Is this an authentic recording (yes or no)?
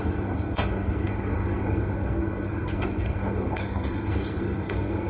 no